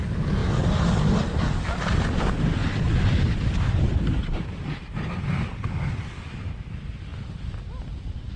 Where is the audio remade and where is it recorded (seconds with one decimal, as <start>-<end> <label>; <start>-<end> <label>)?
0.0-8.4 recorded